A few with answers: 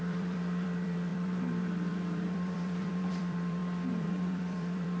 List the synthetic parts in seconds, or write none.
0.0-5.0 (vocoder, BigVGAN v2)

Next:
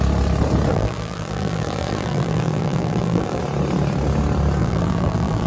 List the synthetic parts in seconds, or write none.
0.7-3.4 (vocoder, BigVGAN v2); 4.6-5.5